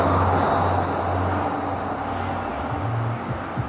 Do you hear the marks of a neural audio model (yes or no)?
no